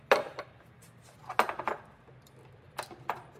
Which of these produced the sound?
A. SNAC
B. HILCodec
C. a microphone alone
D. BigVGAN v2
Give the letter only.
C